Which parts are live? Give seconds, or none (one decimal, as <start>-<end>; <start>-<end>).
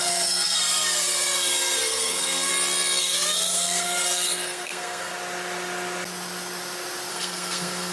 2.5-3.0; 5.1-7.1